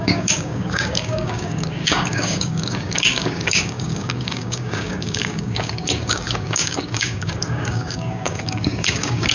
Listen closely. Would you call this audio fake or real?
fake